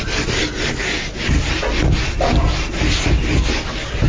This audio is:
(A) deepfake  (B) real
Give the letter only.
B